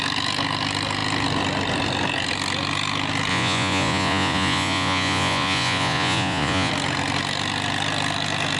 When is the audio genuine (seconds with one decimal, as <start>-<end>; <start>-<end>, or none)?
0.0-3.3; 6.7-8.6